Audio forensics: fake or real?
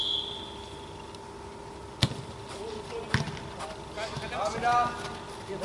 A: real